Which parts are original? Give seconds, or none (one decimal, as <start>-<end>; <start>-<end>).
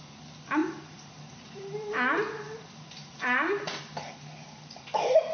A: 0.0-0.6; 3.8-5.3